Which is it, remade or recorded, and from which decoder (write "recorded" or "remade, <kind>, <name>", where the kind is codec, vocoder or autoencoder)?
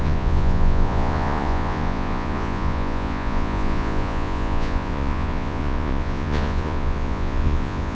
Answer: remade, vocoder, Vocos